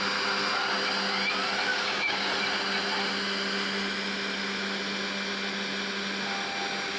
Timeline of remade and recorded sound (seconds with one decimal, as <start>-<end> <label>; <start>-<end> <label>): 0.0-1.7 recorded; 1.7-2.3 remade; 2.3-7.0 recorded